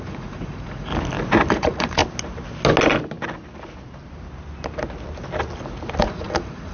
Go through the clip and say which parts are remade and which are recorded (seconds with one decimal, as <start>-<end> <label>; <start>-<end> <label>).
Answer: 0.0-0.9 remade; 0.9-1.5 recorded; 1.5-2.0 remade; 2.0-6.0 recorded; 6.0-6.7 remade